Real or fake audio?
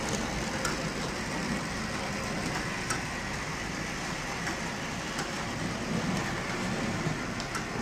real